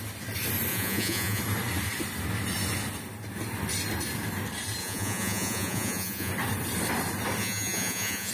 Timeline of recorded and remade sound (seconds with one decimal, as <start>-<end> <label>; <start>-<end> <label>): 0.0-0.7 recorded; 0.7-1.4 remade; 1.4-4.8 recorded; 4.8-6.3 remade; 6.3-7.4 recorded; 7.4-8.3 remade